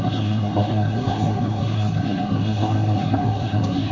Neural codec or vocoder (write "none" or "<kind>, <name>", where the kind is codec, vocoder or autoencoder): codec, SNAC